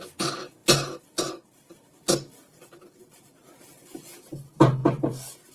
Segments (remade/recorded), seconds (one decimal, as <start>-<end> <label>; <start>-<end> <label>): 0.0-5.5 recorded

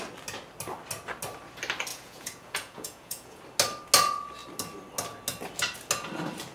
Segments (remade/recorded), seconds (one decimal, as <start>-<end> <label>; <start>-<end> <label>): 0.0-1.9 recorded; 1.9-3.4 remade; 3.4-6.5 recorded

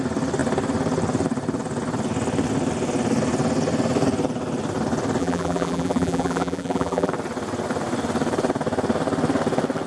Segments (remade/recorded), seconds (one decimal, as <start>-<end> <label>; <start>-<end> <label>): 0.0-5.2 recorded; 5.2-7.1 remade; 7.1-9.9 recorded

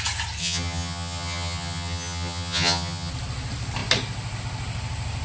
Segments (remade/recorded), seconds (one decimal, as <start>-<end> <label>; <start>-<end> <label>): 0.0-0.4 recorded; 0.4-3.1 remade; 3.1-5.2 recorded